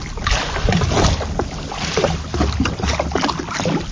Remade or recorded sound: recorded